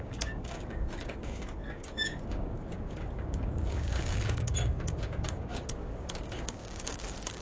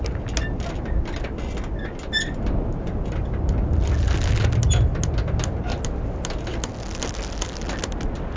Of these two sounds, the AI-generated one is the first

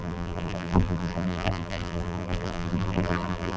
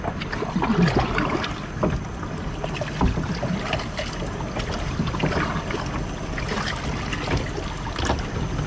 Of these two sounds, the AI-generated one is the first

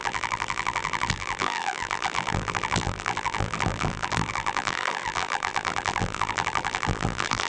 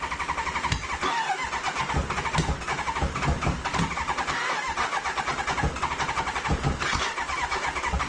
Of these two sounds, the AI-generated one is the first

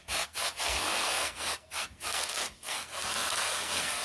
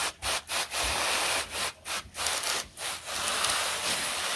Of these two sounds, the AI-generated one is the first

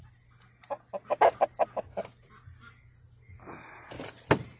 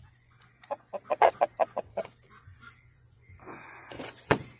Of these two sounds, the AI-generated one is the second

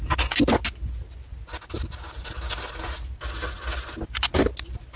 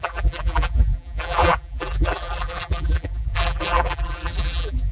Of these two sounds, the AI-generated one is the second